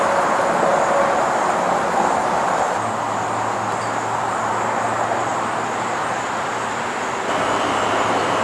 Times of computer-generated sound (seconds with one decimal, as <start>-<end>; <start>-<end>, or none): 0.0-8.4